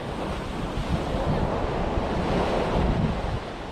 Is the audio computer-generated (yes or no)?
no